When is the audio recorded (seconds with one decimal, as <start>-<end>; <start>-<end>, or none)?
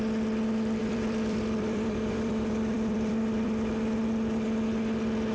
0.0-0.8; 3.7-5.3